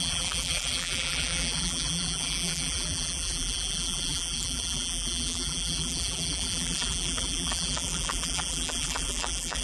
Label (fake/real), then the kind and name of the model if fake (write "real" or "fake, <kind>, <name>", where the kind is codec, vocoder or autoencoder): fake, vocoder, BigVGAN v2